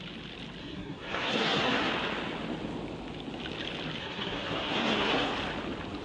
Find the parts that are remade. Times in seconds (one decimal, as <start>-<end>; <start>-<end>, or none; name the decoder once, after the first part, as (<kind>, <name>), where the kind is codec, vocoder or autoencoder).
0.6-1.9 (codec, SNAC); 4.0-5.3